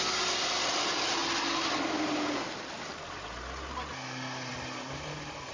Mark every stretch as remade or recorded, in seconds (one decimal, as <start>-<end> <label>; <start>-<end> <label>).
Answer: 0.0-5.5 recorded

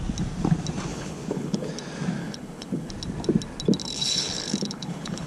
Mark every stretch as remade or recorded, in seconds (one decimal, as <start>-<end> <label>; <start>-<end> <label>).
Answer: 0.0-0.9 recorded; 0.9-1.7 remade; 1.7-2.2 recorded; 2.2-2.9 remade; 2.9-3.8 recorded; 3.8-5.3 remade

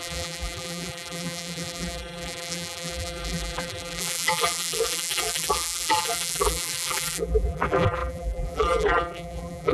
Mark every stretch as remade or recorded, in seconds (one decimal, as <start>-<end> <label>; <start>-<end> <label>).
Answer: 0.0-9.7 remade